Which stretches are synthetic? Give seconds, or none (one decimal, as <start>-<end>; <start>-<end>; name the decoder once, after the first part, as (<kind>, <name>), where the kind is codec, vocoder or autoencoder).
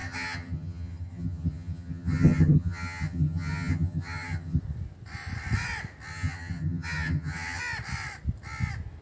0.0-4.6 (vocoder, HiFi-GAN); 6.1-7.6